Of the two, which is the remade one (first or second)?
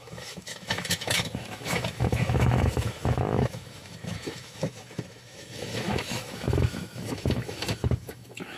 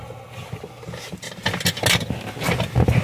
first